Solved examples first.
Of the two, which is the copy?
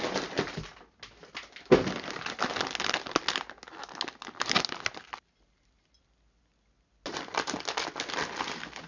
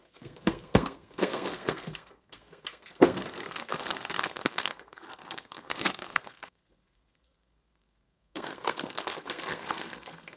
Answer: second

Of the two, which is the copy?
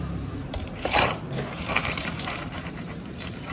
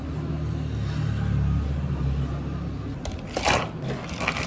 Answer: first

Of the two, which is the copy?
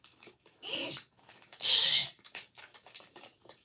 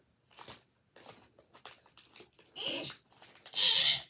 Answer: first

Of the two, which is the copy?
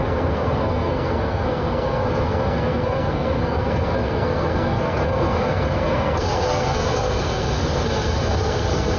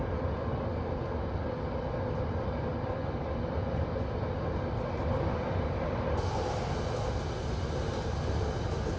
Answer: first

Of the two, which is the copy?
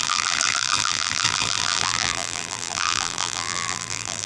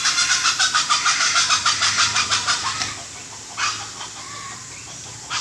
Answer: first